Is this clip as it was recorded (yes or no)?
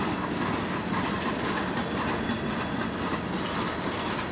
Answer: yes